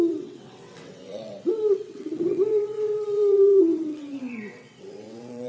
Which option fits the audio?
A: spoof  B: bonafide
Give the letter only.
A